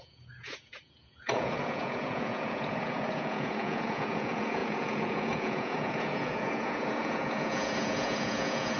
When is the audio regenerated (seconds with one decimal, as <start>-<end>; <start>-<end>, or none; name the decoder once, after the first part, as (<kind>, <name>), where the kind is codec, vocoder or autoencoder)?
0.0-8.8 (vocoder, Vocos)